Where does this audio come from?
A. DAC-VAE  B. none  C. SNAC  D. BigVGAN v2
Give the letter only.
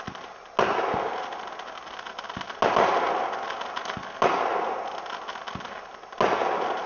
B